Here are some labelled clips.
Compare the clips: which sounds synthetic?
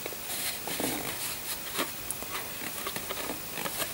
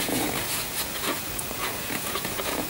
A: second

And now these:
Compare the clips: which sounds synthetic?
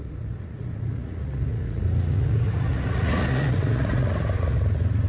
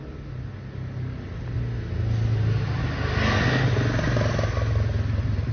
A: first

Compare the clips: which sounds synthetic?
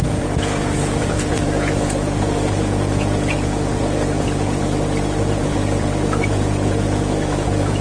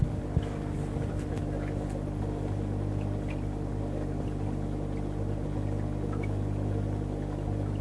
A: first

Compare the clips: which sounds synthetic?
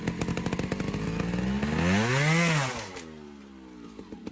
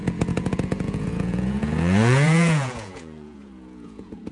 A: second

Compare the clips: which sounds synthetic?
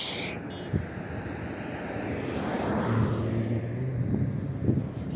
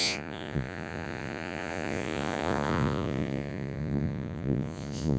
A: second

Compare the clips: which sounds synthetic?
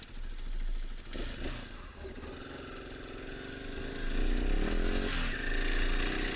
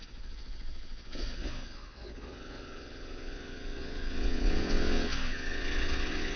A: second